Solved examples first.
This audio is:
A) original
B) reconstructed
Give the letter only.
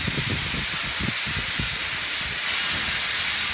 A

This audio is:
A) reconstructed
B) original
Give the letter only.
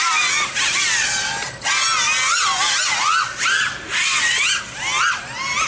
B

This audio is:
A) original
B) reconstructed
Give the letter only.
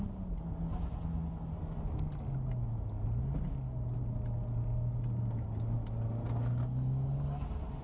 A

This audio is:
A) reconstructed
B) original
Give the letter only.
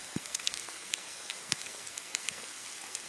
A